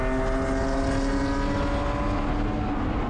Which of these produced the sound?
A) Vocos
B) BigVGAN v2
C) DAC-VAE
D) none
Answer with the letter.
D